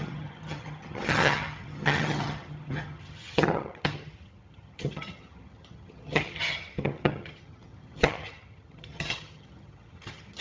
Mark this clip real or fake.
fake